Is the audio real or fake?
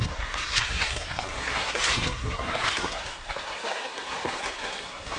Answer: fake